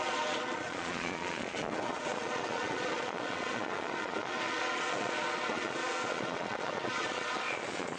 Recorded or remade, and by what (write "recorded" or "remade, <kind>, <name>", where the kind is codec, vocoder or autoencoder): remade, vocoder, Vocos